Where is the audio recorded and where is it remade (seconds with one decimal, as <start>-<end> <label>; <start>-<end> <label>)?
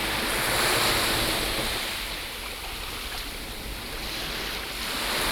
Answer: 0.0-5.3 recorded